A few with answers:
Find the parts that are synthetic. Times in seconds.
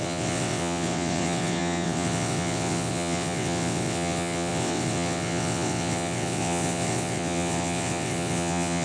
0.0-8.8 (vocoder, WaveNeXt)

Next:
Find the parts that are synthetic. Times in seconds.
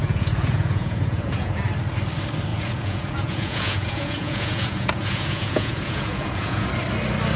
0.0-1.5 (vocoder, Vocos); 2.5-6.7